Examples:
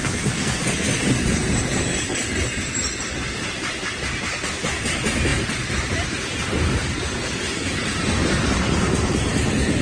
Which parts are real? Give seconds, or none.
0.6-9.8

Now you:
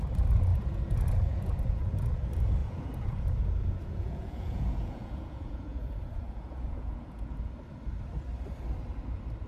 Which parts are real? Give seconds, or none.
0.0-0.5; 2.1-2.6; 7.5-9.5

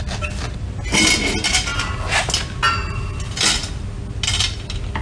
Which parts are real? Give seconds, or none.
0.0-5.0

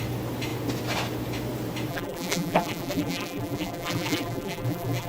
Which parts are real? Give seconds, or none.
0.0-1.9

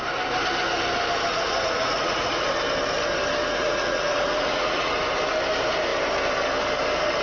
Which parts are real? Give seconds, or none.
0.0-1.3; 2.5-3.4; 4.9-7.2

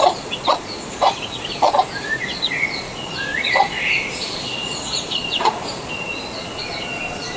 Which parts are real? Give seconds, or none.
none

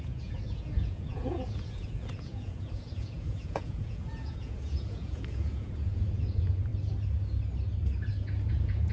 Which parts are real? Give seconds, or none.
6.7-8.5

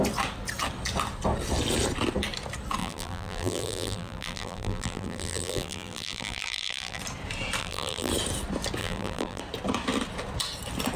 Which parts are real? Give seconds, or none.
0.0-2.8; 7.0-7.6; 8.1-8.8; 9.4-11.0